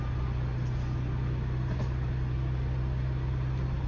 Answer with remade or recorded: recorded